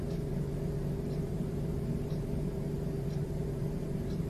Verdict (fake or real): fake